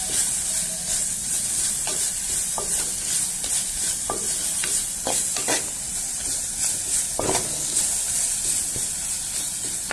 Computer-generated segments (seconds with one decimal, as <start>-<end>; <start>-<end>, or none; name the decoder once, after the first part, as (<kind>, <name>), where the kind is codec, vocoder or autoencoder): 1.2-2.8 (vocoder, BigVGAN v2)